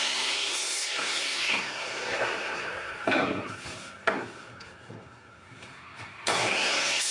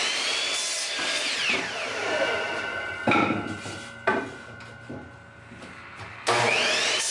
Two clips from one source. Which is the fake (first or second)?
first